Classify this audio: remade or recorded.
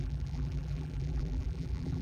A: remade